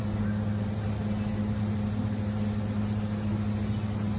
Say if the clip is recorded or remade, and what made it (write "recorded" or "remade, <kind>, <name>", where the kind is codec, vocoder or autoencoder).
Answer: recorded